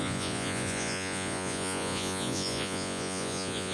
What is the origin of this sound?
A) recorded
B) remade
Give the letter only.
B